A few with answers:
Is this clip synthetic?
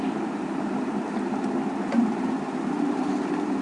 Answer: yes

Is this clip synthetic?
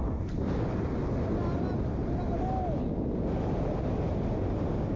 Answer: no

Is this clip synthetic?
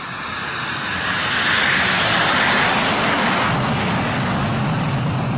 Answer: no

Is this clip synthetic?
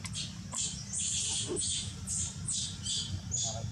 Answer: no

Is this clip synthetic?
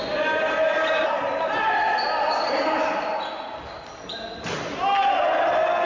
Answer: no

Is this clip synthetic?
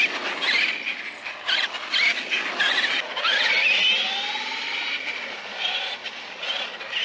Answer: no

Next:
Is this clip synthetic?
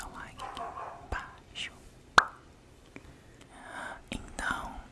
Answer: no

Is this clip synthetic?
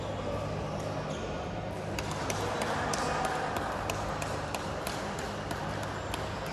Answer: no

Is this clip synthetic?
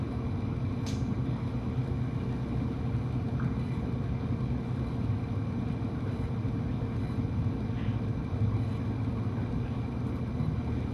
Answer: no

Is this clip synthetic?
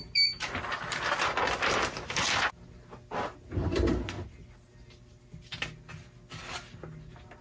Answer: no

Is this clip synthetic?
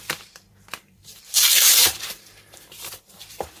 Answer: yes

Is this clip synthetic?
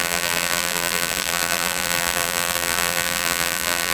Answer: yes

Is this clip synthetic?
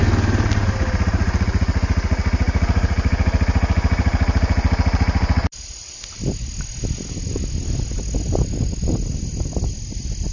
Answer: no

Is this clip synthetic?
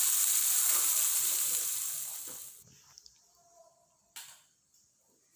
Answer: no